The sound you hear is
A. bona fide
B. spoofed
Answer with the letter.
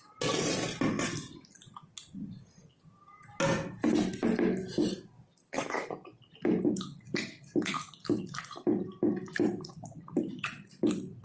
A